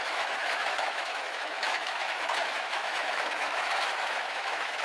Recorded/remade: remade